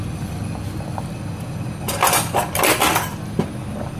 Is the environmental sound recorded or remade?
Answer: recorded